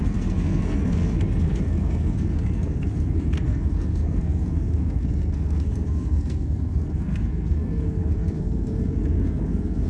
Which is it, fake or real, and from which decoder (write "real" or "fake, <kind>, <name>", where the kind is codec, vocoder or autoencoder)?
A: fake, codec, SNAC